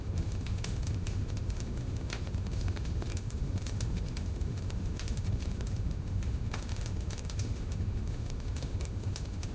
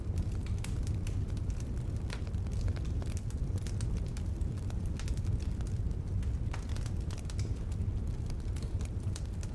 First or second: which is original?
second